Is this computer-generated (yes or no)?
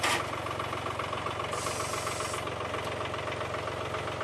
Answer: no